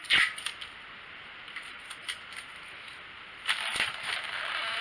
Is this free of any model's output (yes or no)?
yes